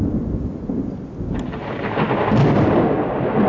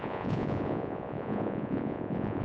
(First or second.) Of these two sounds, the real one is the first